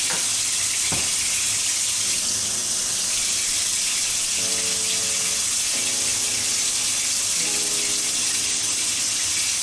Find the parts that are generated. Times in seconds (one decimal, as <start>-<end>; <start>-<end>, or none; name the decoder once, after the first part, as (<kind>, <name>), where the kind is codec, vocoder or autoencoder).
none